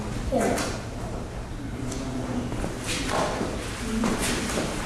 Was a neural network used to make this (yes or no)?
no